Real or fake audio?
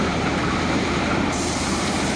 fake